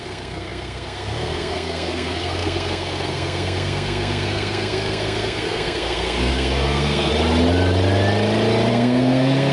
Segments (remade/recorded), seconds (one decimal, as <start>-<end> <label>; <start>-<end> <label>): 0.0-7.1 remade; 7.1-8.7 recorded; 8.7-9.5 remade